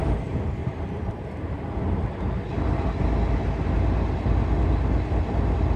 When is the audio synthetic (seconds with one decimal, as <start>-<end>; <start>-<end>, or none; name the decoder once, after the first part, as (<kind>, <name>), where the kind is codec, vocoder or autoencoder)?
0.6-1.3 (vocoder, BigVGAN v2)